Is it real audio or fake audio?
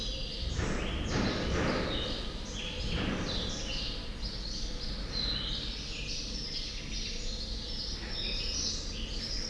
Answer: real